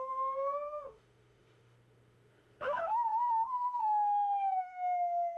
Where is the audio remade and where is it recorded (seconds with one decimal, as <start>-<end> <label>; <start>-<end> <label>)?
0.0-5.4 remade